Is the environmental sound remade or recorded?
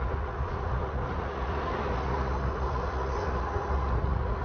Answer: remade